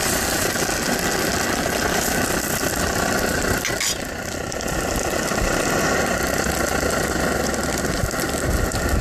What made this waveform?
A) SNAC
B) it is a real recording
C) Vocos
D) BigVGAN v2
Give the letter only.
B